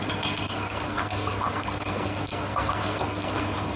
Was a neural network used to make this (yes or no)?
yes